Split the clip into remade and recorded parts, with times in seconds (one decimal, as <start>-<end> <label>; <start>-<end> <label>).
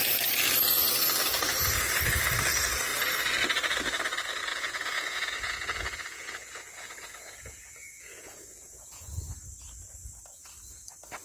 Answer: 0.0-4.5 recorded; 4.5-9.1 remade; 9.1-11.2 recorded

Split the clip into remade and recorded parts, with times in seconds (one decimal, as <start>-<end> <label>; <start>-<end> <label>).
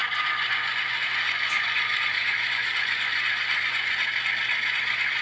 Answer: 0.0-4.0 remade; 4.0-4.7 recorded; 4.7-5.2 remade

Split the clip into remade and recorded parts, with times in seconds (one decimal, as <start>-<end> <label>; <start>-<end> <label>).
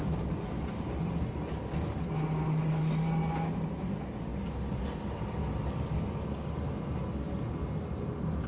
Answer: 0.0-8.5 recorded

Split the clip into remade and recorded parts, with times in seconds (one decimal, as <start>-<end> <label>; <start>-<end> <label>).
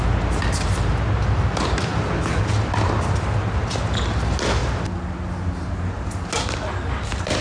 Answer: 0.0-7.4 recorded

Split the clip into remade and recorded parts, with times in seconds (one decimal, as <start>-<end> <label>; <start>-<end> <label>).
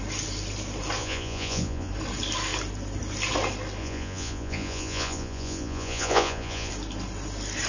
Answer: 0.0-1.0 recorded; 1.0-1.9 remade; 1.9-3.8 recorded; 3.8-6.7 remade; 6.7-7.7 recorded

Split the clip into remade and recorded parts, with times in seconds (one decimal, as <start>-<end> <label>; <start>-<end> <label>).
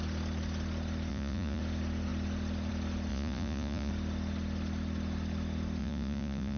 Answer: 0.0-1.1 recorded; 1.1-1.6 remade; 1.6-3.1 recorded; 3.1-3.9 remade; 3.9-5.8 recorded; 5.8-6.6 remade